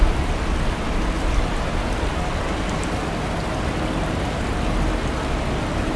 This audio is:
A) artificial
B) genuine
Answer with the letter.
B